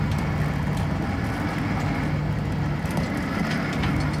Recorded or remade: recorded